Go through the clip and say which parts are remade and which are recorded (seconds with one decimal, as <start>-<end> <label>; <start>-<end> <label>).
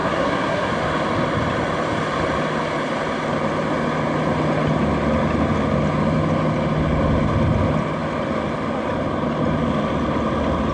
0.0-0.7 remade; 0.7-10.7 recorded